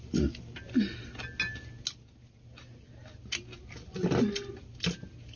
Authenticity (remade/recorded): recorded